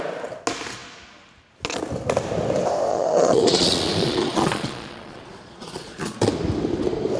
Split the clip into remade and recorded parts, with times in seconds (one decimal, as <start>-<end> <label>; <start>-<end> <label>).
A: 0.0-2.9 recorded; 2.9-6.3 remade; 6.3-7.2 recorded